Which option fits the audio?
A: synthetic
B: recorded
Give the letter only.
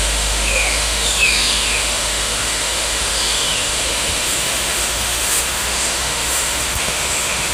A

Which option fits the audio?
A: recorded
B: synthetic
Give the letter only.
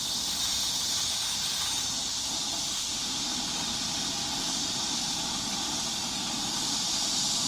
A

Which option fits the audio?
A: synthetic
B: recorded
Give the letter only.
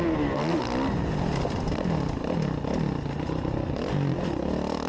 B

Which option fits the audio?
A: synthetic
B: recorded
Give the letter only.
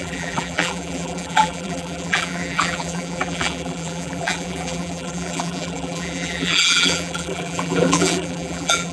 A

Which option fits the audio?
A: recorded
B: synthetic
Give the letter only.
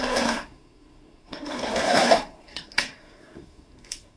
B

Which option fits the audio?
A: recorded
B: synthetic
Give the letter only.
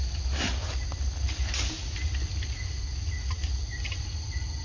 A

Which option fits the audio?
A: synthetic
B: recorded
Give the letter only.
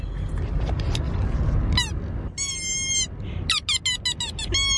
B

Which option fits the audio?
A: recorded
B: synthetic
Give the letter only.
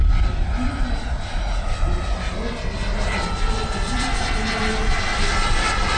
A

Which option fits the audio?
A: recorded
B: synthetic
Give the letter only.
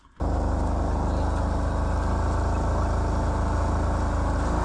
A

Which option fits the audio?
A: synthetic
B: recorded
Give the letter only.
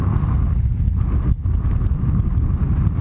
B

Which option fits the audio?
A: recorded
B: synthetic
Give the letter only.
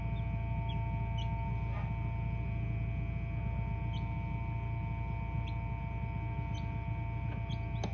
A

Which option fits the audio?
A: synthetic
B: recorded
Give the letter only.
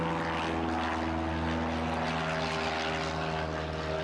B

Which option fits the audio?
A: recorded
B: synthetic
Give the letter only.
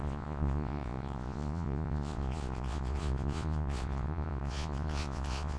B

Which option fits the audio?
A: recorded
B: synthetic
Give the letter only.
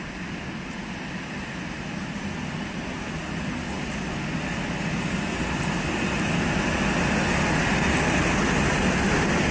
A